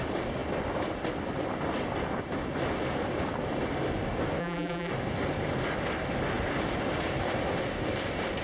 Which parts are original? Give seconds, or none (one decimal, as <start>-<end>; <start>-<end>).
0.0-4.4; 4.9-8.4